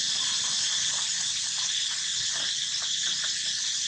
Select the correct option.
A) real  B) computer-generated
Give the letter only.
A